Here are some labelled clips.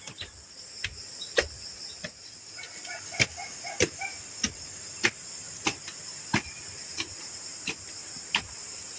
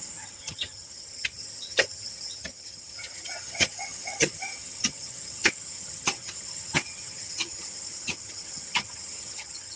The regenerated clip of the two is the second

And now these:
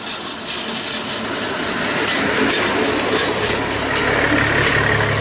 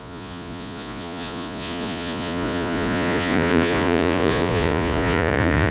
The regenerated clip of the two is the second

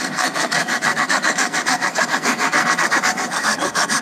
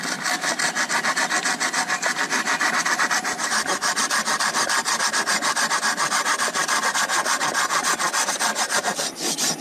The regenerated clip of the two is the first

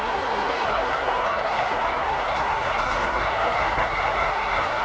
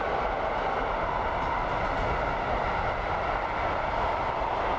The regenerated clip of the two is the first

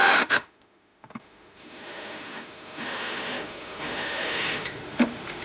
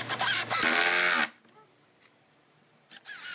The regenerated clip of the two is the first